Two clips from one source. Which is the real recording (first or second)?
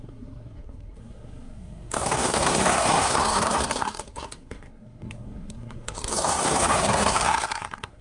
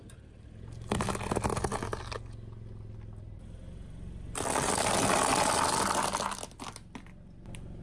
second